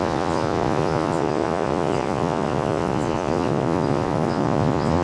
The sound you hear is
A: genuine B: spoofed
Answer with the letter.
B